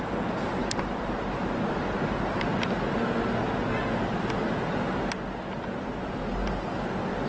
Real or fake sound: real